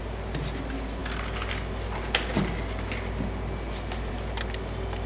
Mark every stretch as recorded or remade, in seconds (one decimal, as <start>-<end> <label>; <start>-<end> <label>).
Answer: 0.0-5.1 recorded